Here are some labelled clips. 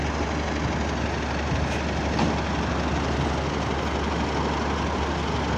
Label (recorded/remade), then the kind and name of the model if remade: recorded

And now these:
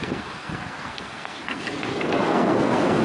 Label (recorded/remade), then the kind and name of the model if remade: remade, codec, SNAC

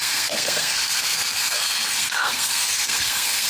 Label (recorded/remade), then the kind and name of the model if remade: remade, codec, SNAC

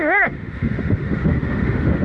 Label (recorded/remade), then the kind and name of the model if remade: remade, autoencoder, DAC-VAE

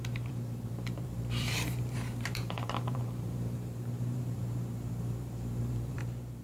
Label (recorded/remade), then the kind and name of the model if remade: remade, vocoder, BigVGAN v2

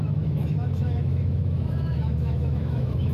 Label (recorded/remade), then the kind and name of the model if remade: remade, autoencoder, DAC-VAE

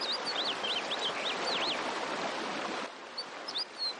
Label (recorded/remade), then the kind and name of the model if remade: recorded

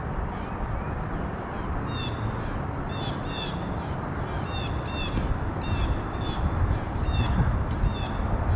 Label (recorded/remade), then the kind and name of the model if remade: recorded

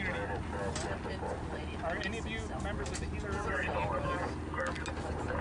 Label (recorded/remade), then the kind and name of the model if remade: recorded